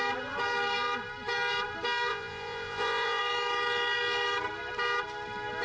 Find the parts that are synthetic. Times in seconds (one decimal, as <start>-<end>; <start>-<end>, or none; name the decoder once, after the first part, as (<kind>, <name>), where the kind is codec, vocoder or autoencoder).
2.1-3.2 (vocoder, Vocos)